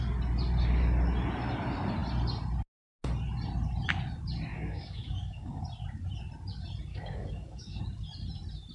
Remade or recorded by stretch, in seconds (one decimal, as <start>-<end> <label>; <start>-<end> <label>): 0.0-4.5 recorded; 4.5-5.6 remade; 5.6-6.9 recorded; 6.9-7.8 remade; 7.8-8.7 recorded